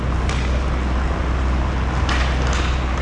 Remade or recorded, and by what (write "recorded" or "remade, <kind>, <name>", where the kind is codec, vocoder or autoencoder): recorded